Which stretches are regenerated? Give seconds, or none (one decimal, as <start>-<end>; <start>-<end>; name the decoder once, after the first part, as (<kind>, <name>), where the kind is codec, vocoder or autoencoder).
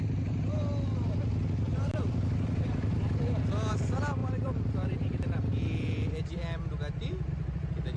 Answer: 1.7-3.4 (vocoder, BigVGAN v2); 4.2-7.3